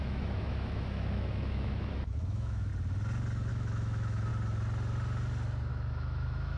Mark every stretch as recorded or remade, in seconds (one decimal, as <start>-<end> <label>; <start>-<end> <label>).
0.0-2.7 remade; 2.7-3.5 recorded; 3.5-4.3 remade; 4.3-5.7 recorded; 5.7-6.6 remade